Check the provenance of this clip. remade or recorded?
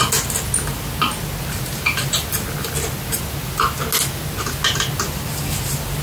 recorded